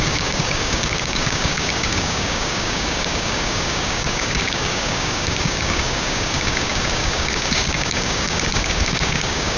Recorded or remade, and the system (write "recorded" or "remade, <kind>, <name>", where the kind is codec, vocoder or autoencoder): remade, codec, DAC